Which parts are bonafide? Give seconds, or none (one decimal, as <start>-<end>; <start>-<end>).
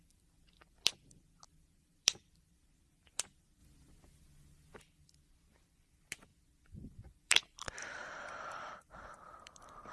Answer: 3.6-4.8; 6.3-6.8